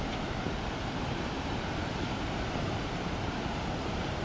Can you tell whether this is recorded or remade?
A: recorded